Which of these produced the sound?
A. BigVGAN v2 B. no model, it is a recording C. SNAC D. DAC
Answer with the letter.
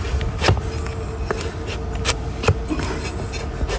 B